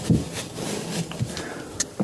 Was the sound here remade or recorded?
recorded